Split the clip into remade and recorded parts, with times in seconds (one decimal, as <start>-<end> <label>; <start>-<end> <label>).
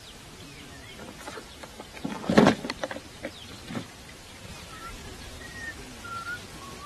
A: 0.0-0.8 recorded; 0.8-3.3 remade; 3.3-5.0 recorded; 5.0-6.1 remade; 6.1-6.9 recorded